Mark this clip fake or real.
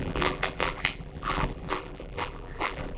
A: fake